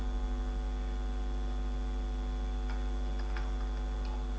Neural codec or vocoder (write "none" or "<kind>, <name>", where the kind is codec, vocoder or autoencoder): none